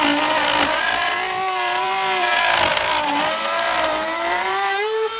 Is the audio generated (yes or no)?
yes